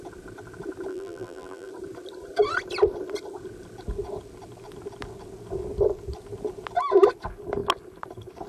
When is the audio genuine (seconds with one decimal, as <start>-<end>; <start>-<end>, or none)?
0.0-0.9; 1.7-8.5